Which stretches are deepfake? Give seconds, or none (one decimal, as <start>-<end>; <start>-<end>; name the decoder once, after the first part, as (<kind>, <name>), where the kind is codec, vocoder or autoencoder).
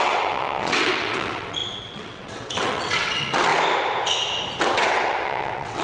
0.0-3.5 (vocoder, WaveNeXt); 4.6-5.8